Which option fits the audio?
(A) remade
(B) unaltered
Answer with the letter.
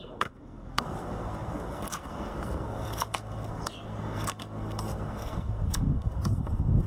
A